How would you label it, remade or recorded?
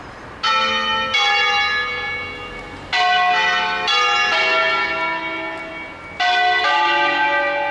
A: recorded